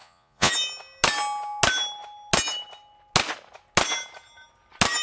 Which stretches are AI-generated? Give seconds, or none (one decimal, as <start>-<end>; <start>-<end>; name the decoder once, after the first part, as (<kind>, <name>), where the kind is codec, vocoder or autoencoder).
0.0-0.5 (vocoder, Vocos)